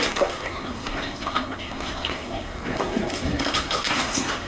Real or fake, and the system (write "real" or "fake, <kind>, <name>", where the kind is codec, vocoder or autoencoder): fake, codec, SNAC